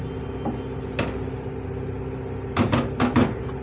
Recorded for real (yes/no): yes